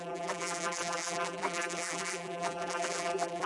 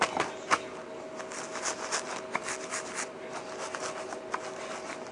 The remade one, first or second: first